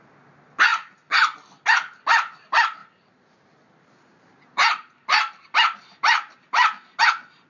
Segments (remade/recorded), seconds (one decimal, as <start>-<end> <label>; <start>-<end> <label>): 0.0-2.8 recorded; 2.8-7.0 remade; 7.0-7.5 recorded